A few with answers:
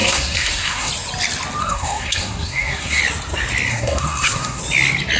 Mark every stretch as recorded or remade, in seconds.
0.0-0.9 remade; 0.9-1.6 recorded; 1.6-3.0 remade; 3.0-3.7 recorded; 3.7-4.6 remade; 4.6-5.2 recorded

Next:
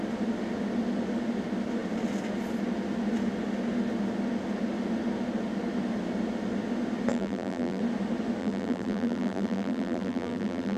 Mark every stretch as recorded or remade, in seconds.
0.0-7.1 recorded; 7.1-7.8 remade; 7.8-8.4 recorded; 8.4-10.8 remade

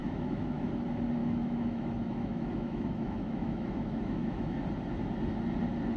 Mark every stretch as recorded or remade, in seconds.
0.0-0.7 remade; 0.7-1.2 recorded; 1.2-4.6 remade; 4.6-6.0 recorded

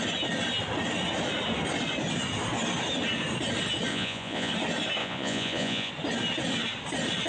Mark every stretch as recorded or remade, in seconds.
0.0-3.9 recorded; 3.9-4.5 remade; 4.5-5.0 recorded; 5.0-5.9 remade; 5.9-7.3 recorded

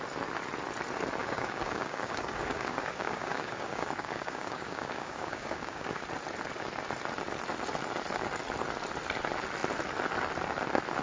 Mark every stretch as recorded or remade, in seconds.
0.0-1.2 recorded; 1.2-6.0 remade; 6.0-11.0 recorded

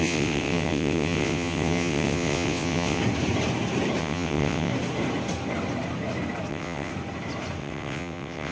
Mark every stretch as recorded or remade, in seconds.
0.0-3.0 remade; 3.0-4.0 recorded; 4.0-4.7 remade; 4.7-6.5 recorded; 6.5-6.9 remade; 6.9-7.6 recorded; 7.6-8.5 remade

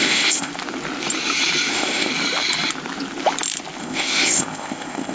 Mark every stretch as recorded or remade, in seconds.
0.0-0.5 remade; 0.5-1.7 recorded; 1.7-2.1 remade; 2.1-3.8 recorded; 3.8-5.1 remade

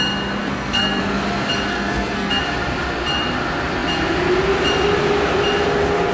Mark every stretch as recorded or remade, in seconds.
0.0-0.4 recorded; 0.4-1.0 remade; 1.0-1.7 recorded; 1.7-2.4 remade; 2.4-6.1 recorded